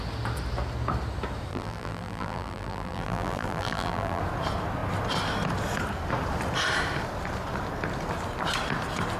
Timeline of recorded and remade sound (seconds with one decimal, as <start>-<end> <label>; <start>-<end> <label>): 0.0-1.5 recorded; 1.5-4.2 remade; 4.2-9.2 recorded

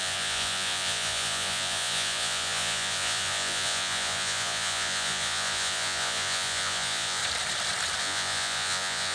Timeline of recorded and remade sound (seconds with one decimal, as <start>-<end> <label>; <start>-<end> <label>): 0.0-7.2 remade; 7.2-8.0 recorded; 8.0-9.1 remade

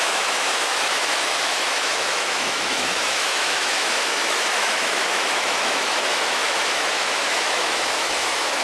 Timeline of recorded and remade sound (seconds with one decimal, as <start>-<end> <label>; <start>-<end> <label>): 0.0-8.6 remade

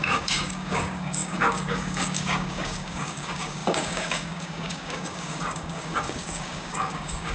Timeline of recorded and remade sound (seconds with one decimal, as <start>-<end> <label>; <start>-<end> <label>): 0.0-7.3 remade

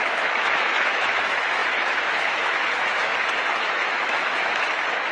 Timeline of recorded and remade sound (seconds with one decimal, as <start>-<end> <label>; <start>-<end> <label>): 0.0-3.1 remade; 3.1-3.6 recorded; 3.6-5.1 remade

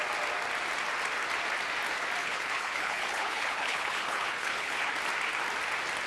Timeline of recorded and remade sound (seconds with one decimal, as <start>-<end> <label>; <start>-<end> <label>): 0.0-2.2 recorded; 2.2-4.9 remade; 4.9-6.1 recorded

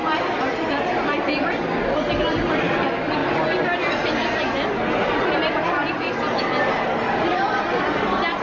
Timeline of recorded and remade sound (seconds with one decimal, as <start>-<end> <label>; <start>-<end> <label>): 0.0-8.4 recorded

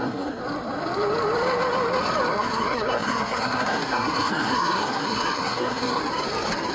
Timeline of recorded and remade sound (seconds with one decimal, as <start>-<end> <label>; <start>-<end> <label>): 0.0-0.4 remade; 0.4-2.3 recorded; 2.3-6.0 remade; 6.0-6.7 recorded